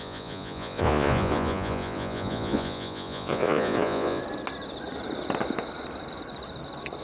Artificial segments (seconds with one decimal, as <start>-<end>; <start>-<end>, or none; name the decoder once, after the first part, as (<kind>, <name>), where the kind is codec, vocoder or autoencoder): 0.0-4.2 (vocoder, Vocos)